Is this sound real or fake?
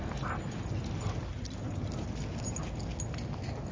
real